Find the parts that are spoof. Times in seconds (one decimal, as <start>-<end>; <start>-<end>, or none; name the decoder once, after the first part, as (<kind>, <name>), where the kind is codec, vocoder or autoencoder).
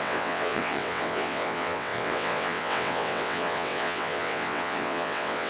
0.0-5.5 (vocoder, WaveNeXt)